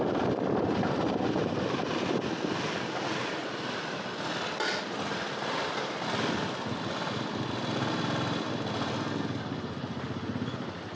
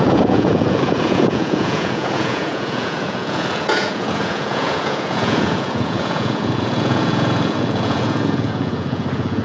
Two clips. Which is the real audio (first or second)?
first